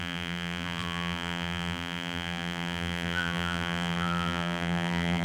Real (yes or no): no